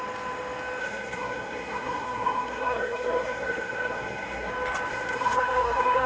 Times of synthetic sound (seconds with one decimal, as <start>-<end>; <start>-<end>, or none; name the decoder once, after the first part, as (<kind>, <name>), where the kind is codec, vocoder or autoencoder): 0.8-4.5 (codec, SNAC); 4.9-6.1